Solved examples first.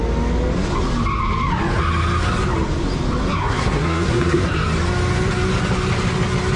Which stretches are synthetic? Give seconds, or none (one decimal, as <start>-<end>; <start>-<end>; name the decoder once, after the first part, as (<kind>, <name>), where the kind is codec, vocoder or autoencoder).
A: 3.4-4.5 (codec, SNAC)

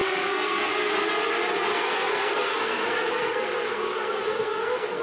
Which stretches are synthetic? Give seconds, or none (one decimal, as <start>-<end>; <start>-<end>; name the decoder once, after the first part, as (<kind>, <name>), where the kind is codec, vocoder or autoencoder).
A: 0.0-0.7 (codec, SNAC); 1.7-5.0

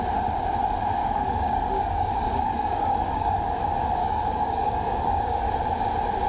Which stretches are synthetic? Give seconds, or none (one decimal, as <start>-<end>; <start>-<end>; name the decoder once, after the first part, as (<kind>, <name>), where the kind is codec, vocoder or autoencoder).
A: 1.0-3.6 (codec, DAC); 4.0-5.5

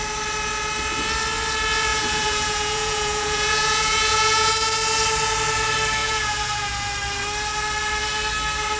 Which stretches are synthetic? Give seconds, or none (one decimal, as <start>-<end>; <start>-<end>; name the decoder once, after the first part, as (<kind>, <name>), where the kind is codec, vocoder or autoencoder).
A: 1.9-4.5 (vocoder, Vocos); 6.0-6.9

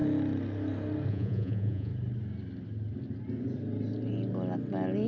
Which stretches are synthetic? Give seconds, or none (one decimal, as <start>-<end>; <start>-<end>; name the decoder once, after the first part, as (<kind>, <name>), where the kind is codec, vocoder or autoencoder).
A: 1.1-1.9 (vocoder, Vocos)

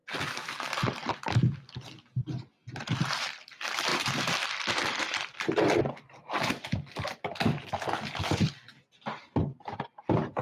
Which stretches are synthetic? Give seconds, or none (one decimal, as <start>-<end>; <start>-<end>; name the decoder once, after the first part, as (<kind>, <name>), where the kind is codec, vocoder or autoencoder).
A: 3.9-7.6 (vocoder, BigVGAN v2)

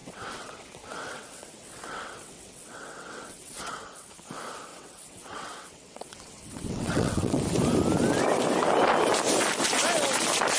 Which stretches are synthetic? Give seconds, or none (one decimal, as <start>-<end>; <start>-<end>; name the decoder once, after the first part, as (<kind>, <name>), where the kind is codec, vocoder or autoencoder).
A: 0.0-4.1 (vocoder, WaveNeXt); 4.7-7.4